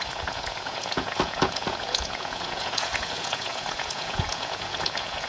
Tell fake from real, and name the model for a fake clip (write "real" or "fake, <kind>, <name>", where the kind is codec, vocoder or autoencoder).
fake, vocoder, Vocos